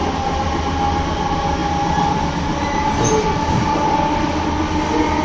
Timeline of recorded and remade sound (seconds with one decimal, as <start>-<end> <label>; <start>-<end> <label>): 0.0-5.2 recorded